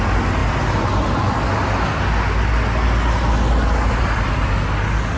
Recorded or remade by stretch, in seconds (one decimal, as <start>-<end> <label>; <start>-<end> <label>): 0.0-5.2 recorded